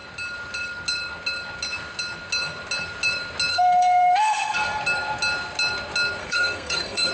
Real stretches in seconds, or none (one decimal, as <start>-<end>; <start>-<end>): 0.0-3.5; 4.8-6.2